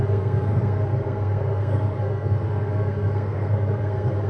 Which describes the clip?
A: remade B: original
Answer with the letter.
A